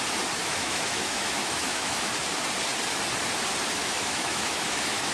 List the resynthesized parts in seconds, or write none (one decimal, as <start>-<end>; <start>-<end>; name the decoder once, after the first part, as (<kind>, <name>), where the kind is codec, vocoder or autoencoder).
0.4-2.1 (autoencoder, DAC-VAE); 3.8-5.1